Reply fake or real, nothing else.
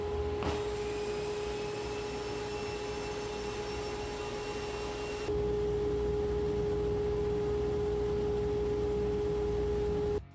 real